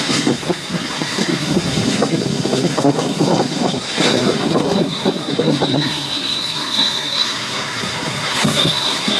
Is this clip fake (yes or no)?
yes